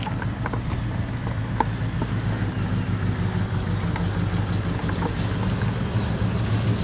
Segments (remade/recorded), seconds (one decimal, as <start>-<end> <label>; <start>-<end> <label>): 0.0-2.0 recorded; 2.0-2.5 remade; 2.5-6.8 recorded